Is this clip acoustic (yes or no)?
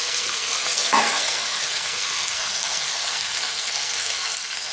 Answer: no